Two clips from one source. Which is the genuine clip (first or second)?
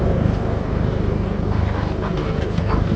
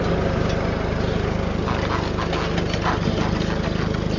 second